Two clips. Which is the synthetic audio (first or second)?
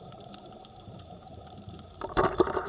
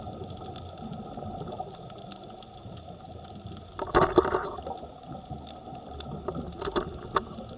first